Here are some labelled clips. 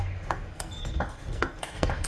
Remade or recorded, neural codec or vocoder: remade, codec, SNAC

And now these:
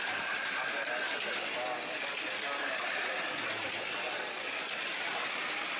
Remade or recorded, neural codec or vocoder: recorded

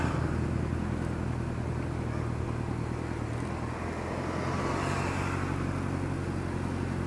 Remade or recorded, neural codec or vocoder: recorded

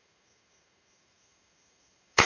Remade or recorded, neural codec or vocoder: remade, autoencoder, DAC-VAE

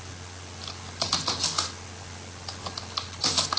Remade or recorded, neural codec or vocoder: recorded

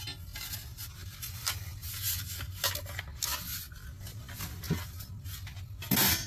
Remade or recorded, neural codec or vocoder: recorded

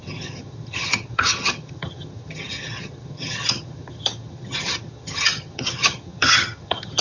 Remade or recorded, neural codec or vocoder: remade, vocoder, HiFi-GAN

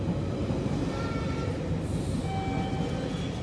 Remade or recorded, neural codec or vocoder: recorded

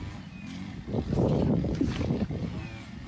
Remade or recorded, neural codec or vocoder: recorded